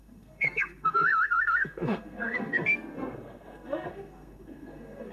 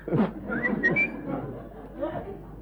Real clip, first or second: second